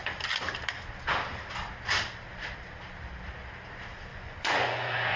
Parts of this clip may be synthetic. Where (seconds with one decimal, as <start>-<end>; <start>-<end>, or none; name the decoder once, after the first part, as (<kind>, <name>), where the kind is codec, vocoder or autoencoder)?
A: 4.1-5.2 (vocoder, Vocos)